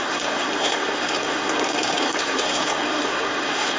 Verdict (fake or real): fake